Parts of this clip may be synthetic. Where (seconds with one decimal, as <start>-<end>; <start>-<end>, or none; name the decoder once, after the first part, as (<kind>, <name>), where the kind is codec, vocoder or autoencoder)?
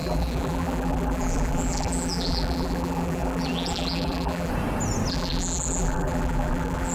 0.0-4.5 (vocoder, BigVGAN v2); 5.1-6.9